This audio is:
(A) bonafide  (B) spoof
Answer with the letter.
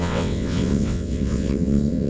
B